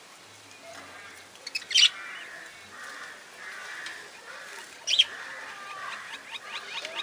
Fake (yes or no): no